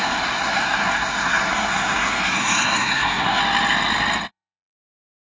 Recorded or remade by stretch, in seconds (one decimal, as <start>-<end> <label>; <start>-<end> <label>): 0.0-3.4 remade; 3.4-4.3 recorded; 4.3-5.2 remade